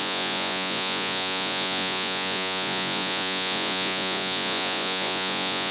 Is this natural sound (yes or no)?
no